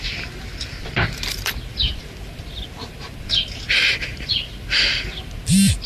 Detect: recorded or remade recorded